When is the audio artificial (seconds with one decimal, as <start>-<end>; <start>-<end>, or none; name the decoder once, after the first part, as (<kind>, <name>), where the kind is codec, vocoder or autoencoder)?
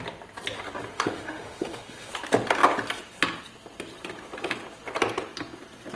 0.9-2.1 (autoencoder, DAC-VAE)